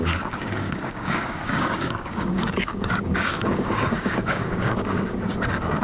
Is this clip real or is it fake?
fake